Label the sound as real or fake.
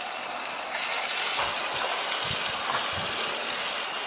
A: real